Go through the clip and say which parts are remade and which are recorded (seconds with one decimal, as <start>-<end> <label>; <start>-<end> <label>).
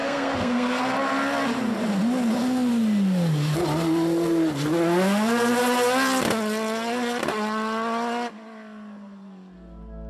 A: 0.0-0.8 remade; 0.8-10.1 recorded